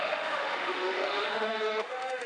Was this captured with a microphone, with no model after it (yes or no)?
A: no